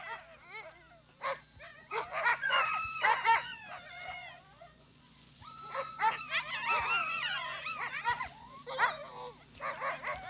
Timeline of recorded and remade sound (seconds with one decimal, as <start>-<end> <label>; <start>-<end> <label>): 0.0-1.7 recorded; 1.7-6.2 remade; 6.2-7.0 recorded; 7.0-8.5 remade; 8.5-10.3 recorded